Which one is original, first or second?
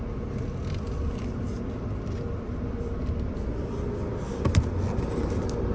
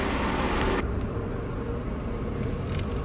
first